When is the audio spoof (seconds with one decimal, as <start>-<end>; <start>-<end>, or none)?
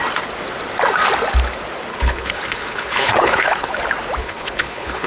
1.9-3.7; 4.2-5.1